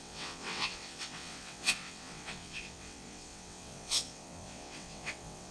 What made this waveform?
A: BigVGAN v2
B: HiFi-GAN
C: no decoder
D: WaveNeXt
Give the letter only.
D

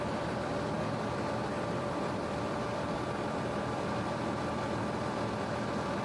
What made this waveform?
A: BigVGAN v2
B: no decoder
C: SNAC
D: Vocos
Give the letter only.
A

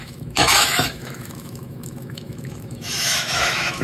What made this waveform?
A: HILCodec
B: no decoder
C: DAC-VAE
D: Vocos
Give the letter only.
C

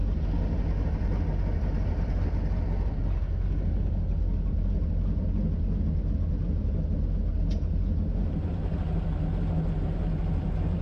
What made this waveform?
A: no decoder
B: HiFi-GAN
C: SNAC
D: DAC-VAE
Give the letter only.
A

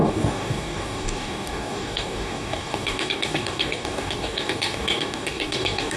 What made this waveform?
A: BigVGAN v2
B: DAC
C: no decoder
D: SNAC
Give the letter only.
B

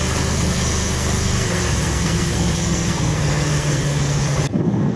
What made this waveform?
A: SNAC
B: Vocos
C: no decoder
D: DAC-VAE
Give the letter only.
A